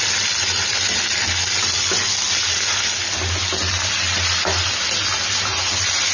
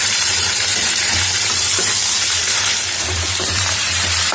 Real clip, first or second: first